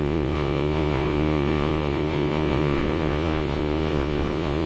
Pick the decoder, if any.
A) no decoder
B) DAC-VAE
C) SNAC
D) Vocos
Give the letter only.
D